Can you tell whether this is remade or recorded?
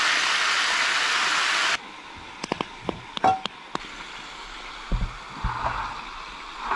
recorded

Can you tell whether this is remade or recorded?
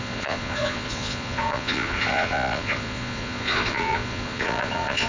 remade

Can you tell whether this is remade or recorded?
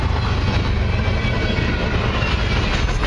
recorded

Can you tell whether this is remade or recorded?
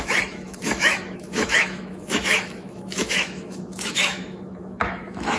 remade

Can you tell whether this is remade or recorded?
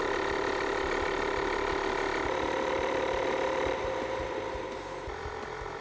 recorded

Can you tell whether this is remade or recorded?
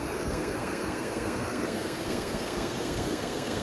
remade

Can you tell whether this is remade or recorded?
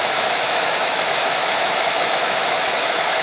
remade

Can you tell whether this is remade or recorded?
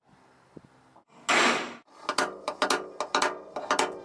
recorded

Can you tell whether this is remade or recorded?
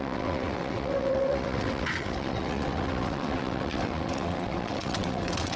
remade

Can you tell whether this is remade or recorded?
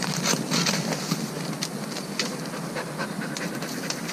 recorded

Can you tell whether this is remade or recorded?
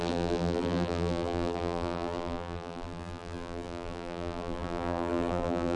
remade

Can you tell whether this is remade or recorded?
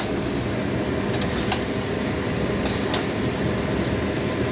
recorded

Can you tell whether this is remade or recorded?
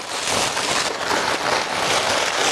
recorded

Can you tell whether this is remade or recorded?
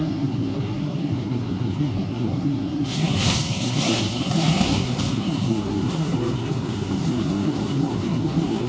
remade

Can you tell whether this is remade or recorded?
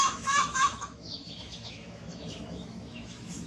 remade